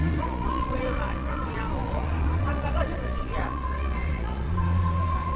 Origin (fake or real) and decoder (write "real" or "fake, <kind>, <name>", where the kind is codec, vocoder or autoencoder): fake, vocoder, Vocos